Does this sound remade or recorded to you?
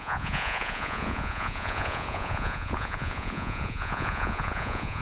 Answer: remade